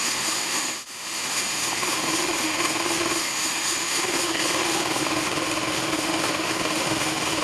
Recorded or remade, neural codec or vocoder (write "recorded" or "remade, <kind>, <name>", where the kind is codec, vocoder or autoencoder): remade, autoencoder, DAC-VAE